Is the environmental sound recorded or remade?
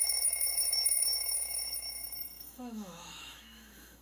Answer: remade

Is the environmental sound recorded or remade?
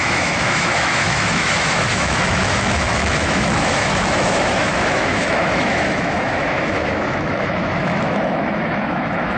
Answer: remade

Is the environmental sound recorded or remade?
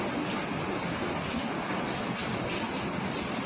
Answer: recorded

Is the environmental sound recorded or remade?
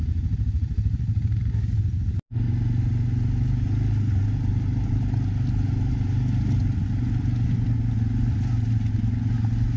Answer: recorded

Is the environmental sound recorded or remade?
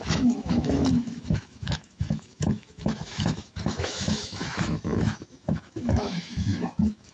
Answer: remade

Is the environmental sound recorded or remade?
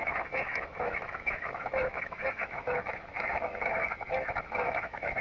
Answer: remade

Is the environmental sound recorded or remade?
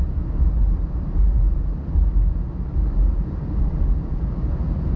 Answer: recorded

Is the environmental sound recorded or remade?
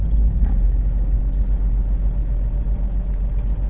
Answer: recorded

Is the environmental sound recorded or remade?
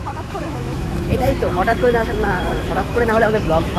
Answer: remade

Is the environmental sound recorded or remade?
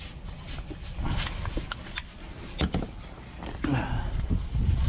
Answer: recorded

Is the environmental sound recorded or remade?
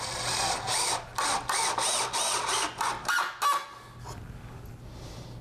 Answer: recorded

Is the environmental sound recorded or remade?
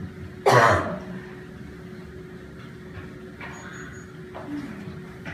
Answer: recorded